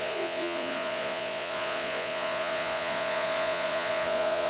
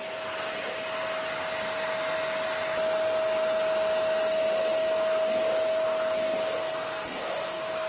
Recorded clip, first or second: second